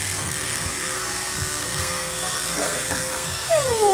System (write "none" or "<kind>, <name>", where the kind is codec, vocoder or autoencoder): codec, SNAC